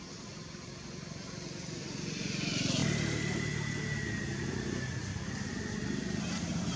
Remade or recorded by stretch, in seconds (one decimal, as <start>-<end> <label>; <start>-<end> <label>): 0.0-6.8 recorded